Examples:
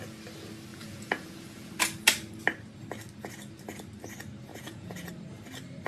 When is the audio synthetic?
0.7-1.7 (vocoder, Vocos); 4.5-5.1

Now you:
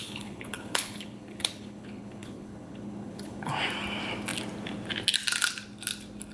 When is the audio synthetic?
0.0-3.5 (codec, HILCodec)

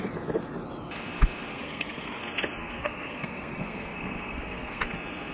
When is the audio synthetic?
1.5-2.2 (codec, SNAC); 2.6-4.8

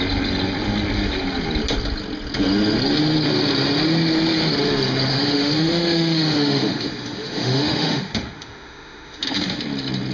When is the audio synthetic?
5.1-9.6 (autoencoder, DAC-VAE)